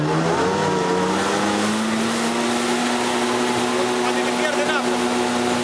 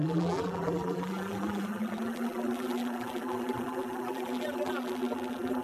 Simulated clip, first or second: second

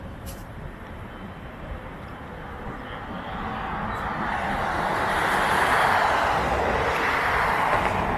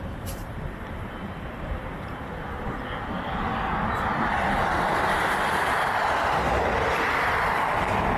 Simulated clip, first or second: second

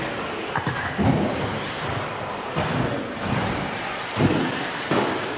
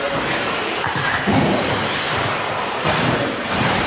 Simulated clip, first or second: second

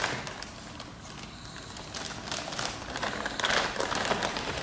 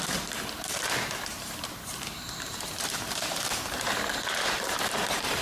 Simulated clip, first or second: second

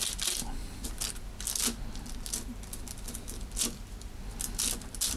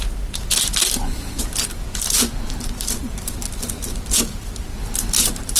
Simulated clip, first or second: second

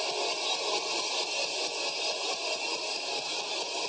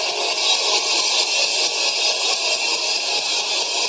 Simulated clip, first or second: first